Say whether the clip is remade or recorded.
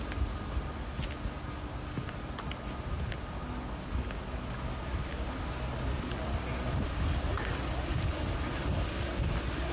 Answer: recorded